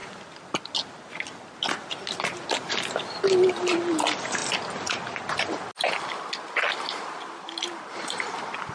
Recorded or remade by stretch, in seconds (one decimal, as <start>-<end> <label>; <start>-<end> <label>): 0.0-8.7 recorded